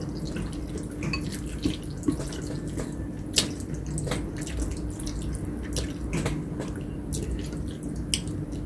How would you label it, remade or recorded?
recorded